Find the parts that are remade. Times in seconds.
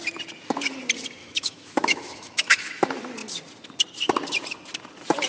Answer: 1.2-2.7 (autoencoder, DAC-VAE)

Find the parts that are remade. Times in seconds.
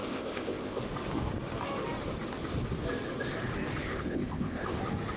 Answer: 0.0-0.8 (codec, ZipCodec); 3.8-4.8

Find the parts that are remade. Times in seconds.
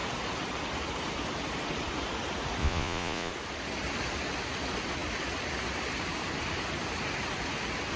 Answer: 2.6-3.3 (vocoder, Vocos)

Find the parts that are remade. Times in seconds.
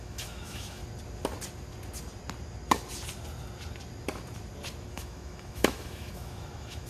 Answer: 0.0-0.8 (autoencoder, DAC-VAE); 4.9-6.9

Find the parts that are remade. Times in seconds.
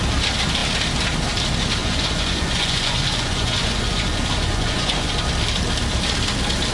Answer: 1.8-5.1 (vocoder, Vocos)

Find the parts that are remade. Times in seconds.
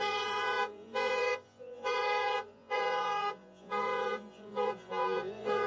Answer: 0.0-5.7 (vocoder, Vocos)